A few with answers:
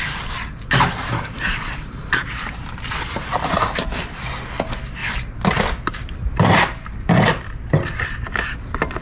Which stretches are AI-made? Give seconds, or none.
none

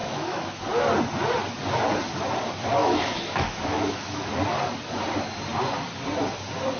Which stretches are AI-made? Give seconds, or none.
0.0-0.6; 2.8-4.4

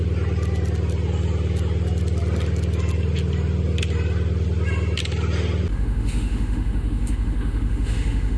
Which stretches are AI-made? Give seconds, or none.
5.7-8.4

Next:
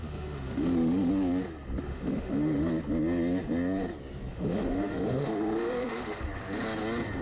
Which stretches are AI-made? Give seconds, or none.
0.0-1.1; 1.9-2.7; 4.3-6.2